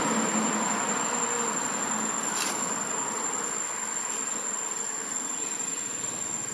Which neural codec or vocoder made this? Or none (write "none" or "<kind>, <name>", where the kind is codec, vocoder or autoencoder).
none